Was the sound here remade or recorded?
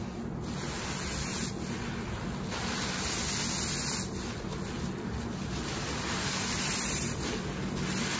recorded